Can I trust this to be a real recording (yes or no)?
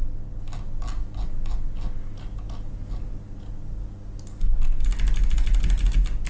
yes